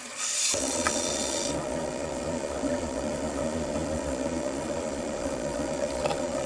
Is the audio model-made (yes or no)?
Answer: yes